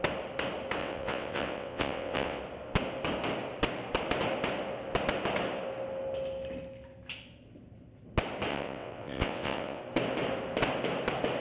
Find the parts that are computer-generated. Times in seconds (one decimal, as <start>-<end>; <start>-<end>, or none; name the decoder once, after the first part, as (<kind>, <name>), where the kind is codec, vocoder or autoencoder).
0.8-2.4 (vocoder, WaveNeXt); 8.5-9.8